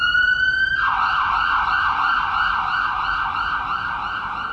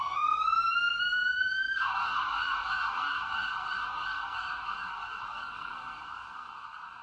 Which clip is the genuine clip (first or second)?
first